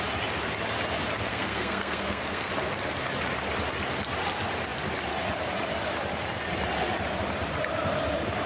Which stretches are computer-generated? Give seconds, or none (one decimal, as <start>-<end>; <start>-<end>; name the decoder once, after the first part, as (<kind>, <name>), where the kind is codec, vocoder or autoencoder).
1.3-2.5 (codec, SNAC)